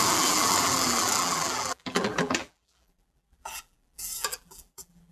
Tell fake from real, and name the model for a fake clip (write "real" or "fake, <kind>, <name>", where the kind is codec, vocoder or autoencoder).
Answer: fake, vocoder, BigVGAN v2